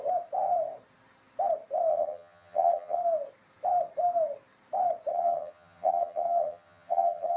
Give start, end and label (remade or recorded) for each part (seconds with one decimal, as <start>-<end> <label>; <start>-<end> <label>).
0.0-1.9 recorded; 1.9-3.0 remade; 3.0-5.1 recorded; 5.1-7.4 remade